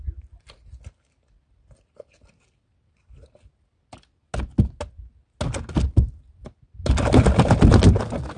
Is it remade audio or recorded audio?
recorded